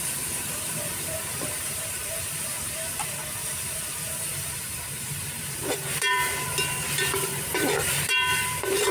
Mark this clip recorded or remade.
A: remade